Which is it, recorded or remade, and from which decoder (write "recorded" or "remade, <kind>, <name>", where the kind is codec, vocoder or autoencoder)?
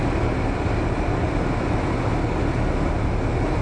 recorded